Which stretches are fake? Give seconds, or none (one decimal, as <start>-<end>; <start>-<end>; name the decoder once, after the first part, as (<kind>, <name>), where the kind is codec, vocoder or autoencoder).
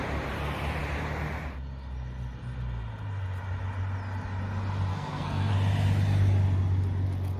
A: 4.9-5.5 (codec, SNAC)